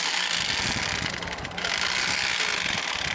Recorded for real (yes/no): yes